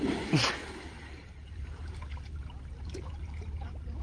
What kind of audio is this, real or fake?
fake